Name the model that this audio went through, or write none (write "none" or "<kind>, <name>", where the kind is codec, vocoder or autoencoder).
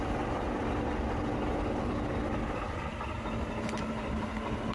none